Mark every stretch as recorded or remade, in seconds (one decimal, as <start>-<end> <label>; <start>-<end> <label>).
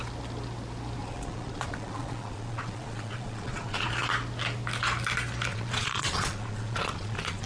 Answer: 0.0-1.0 recorded; 1.0-3.9 remade; 3.9-5.5 recorded; 5.5-7.5 remade